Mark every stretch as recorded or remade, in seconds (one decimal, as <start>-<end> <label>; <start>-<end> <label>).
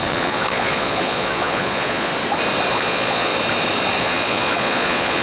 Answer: 0.0-2.1 remade; 2.1-2.7 recorded; 2.7-3.3 remade; 3.3-4.0 recorded; 4.0-5.2 remade